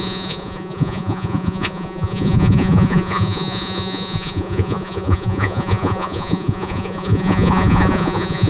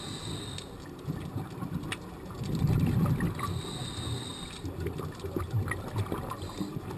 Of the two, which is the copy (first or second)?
first